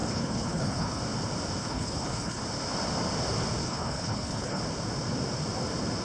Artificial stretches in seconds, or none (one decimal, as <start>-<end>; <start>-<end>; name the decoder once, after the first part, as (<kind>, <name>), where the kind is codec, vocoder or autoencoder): 0.0-1.0 (codec, HILCodec); 1.6-2.4; 3.6-4.6